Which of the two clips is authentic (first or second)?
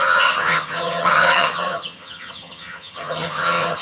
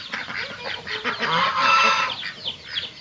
second